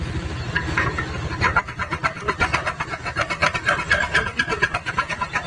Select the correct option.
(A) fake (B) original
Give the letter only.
B